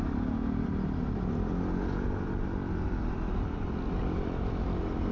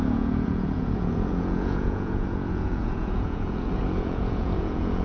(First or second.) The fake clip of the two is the second